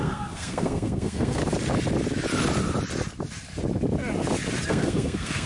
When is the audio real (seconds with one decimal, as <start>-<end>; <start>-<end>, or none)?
1.4-4.7